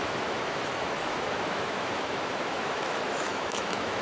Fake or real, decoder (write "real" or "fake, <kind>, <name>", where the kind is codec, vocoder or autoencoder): fake, autoencoder, DAC-VAE